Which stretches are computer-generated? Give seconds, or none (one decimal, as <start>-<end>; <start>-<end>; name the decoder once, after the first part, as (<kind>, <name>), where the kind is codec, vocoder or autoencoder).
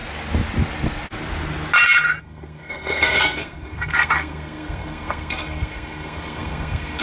2.2-7.0 (codec, SNAC)